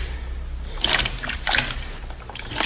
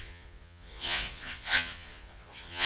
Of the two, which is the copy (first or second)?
second